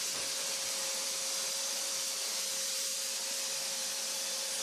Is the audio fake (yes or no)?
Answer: yes